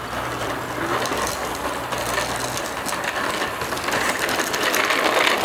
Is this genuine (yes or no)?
yes